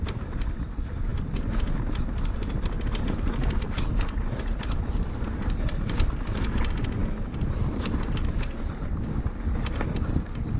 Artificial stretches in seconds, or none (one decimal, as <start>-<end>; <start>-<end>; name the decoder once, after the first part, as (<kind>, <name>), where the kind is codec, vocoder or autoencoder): none